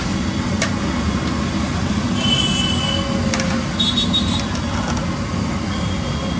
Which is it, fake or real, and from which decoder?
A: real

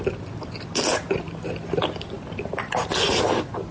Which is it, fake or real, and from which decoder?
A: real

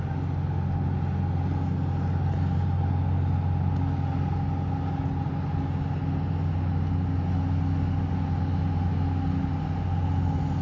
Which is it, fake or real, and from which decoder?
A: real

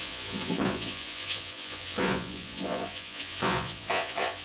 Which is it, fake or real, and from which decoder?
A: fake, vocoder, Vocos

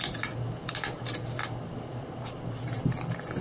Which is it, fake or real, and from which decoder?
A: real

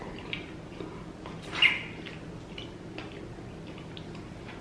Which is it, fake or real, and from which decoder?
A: real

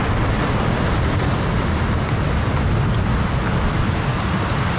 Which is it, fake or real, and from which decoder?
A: real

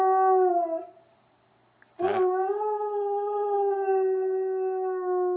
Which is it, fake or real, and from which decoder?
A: real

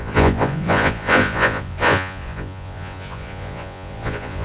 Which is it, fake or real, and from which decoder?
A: fake, vocoder, Vocos